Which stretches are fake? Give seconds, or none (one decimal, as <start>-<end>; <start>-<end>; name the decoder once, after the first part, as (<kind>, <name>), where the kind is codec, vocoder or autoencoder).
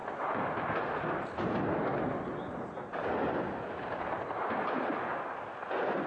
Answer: none